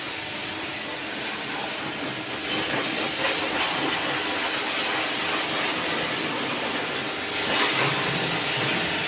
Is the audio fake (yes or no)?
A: no